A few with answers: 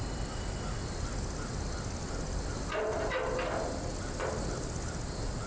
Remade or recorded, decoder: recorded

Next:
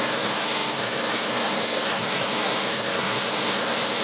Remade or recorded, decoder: remade, codec, SNAC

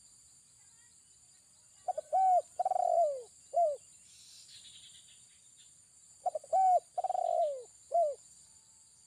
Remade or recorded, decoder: recorded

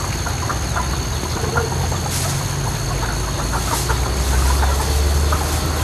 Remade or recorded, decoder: recorded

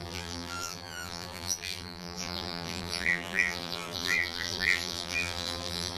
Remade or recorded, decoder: remade, vocoder, BigVGAN v2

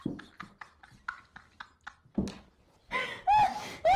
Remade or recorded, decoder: recorded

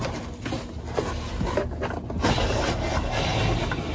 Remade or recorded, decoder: recorded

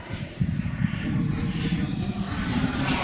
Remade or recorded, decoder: remade, vocoder, BigVGAN v2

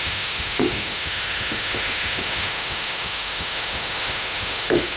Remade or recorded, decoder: remade, autoencoder, DAC-VAE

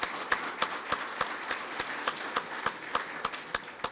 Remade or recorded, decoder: recorded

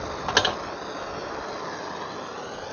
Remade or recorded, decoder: recorded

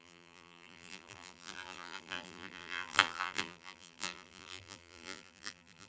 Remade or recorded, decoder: remade, vocoder, BigVGAN v2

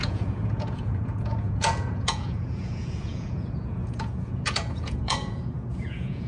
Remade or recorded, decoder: remade, vocoder, Vocos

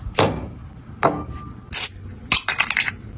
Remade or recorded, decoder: recorded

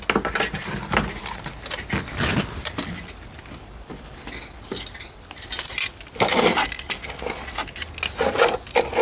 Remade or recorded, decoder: recorded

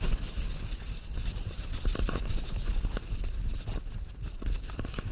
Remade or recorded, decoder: recorded